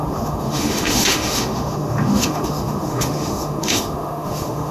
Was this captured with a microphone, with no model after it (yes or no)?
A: no